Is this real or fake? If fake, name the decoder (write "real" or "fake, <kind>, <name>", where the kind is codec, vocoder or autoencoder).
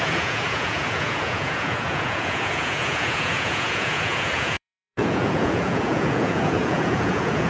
fake, vocoder, Vocos